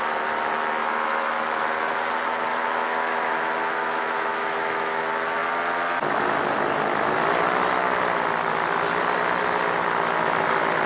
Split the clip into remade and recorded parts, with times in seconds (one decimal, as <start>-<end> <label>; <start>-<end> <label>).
0.0-0.8 recorded; 0.8-1.3 remade; 1.3-2.5 recorded; 2.5-5.0 remade; 5.0-10.9 recorded